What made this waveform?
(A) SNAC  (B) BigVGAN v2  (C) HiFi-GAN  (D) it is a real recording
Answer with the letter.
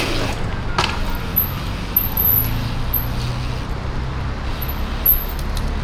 D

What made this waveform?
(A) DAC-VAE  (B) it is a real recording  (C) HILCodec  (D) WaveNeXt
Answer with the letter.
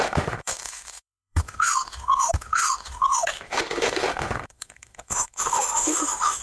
A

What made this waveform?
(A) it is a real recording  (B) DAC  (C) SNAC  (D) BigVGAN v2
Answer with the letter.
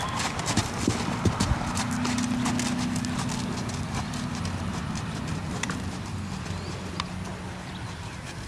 A